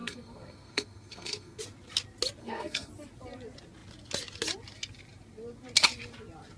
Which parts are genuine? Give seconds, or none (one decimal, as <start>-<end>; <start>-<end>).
1.6-2.4; 2.9-6.6

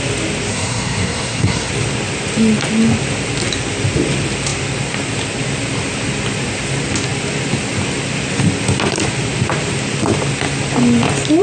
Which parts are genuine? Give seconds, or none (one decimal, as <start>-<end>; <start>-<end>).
0.0-0.5; 1.7-11.4

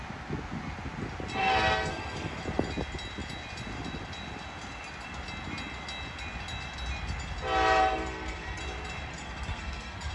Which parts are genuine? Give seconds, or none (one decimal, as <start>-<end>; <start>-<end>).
0.0-1.4; 2.4-7.8; 8.6-9.1

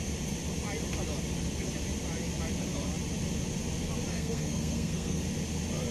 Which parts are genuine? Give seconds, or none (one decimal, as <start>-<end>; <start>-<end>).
0.0-4.1; 5.2-5.9

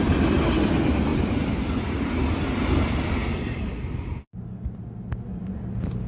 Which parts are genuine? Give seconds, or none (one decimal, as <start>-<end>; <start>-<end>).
0.0-6.1